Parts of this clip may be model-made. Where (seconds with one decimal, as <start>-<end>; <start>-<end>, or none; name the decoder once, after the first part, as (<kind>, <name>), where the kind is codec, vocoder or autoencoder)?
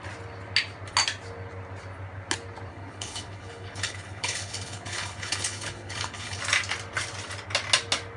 2.7-6.4 (codec, HILCodec)